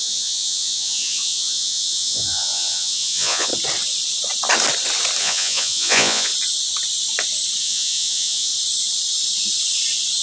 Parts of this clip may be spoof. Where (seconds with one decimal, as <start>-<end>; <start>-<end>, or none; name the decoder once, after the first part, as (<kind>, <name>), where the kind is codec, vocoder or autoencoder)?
0.0-3.5 (vocoder, Vocos); 5.2-6.3; 7.6-8.5